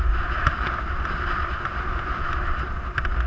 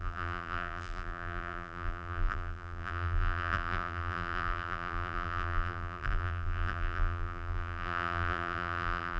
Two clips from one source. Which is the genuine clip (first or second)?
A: first